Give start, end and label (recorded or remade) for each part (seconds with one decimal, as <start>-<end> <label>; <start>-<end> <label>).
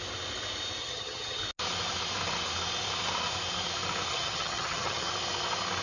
0.0-0.8 recorded; 0.8-1.4 remade; 1.4-4.1 recorded; 4.1-5.1 remade; 5.1-5.8 recorded